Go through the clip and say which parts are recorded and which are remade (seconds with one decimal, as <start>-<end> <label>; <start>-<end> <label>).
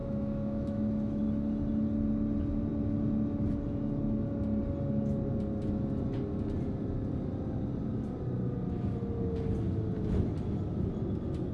0.0-1.2 remade; 1.2-11.5 recorded